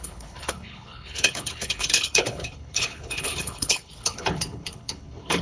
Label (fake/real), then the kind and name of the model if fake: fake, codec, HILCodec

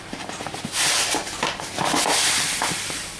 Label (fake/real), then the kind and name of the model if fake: real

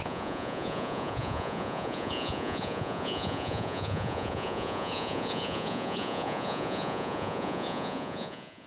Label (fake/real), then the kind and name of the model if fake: fake, vocoder, Vocos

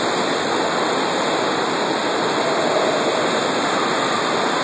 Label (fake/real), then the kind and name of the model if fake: real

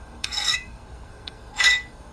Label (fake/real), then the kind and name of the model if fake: fake, codec, SNAC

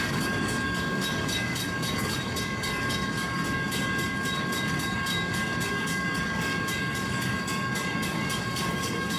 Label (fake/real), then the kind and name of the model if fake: fake, codec, DAC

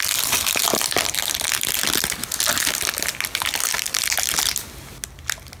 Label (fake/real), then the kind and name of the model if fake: real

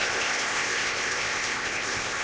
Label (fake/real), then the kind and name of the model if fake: fake, codec, ZipCodec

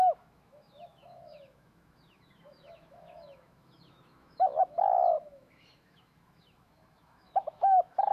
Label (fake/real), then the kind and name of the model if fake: fake, autoencoder, DAC-VAE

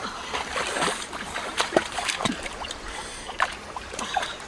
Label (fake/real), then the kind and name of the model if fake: fake, vocoder, BigVGAN v2